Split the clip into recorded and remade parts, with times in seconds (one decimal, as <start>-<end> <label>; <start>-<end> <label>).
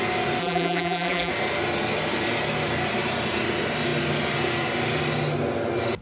0.0-0.4 recorded; 0.4-1.3 remade; 1.3-6.0 recorded